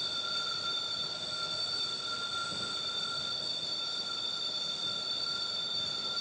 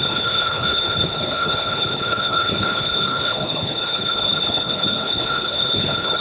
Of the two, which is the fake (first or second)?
second